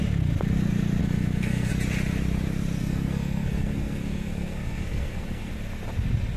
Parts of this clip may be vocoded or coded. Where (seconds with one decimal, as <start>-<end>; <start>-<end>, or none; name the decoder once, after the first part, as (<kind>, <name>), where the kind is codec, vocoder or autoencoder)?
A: 1.0-1.7 (codec, SNAC); 2.8-5.5